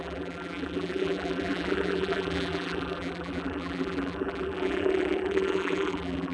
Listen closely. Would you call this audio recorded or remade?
remade